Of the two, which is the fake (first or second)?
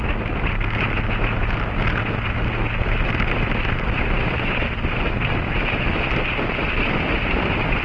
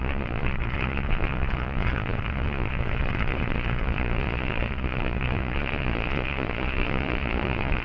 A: second